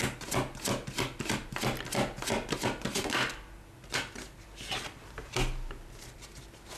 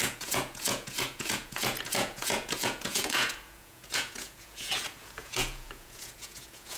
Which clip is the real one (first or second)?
first